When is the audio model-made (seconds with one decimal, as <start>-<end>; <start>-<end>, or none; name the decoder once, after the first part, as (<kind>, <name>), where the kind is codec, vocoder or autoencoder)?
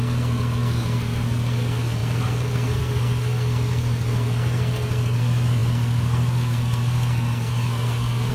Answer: 0.0-8.3 (codec, SNAC)